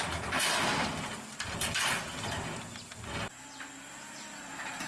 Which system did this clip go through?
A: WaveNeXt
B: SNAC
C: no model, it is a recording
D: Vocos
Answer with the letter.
C